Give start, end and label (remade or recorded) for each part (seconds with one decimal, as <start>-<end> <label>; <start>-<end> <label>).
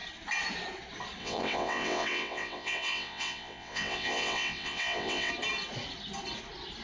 0.0-1.2 recorded; 1.2-5.3 remade; 5.3-6.8 recorded